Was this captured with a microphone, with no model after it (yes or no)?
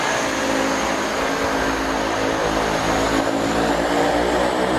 yes